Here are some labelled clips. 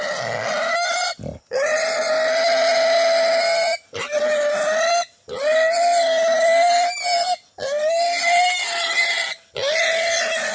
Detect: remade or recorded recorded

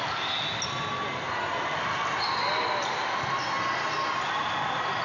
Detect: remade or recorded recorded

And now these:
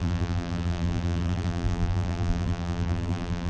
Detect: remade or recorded remade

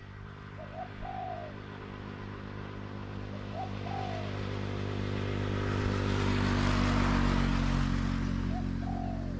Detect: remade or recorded recorded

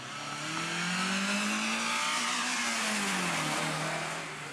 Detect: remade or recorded recorded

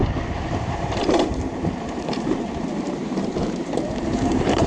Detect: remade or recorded remade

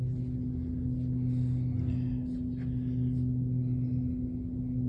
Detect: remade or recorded recorded